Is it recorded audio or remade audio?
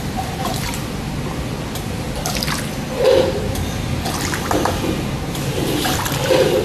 remade